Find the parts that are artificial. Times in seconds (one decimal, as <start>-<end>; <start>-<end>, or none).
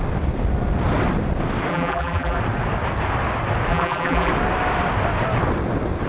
1.7-2.4; 3.7-4.3